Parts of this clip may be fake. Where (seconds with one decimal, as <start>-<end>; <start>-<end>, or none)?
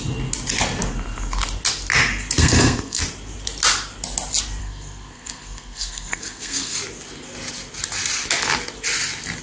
2.4-3.0; 4.6-6.8